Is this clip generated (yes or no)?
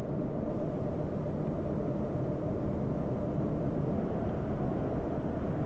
no